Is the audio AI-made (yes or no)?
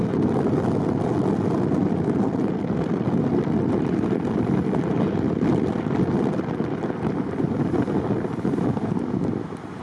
no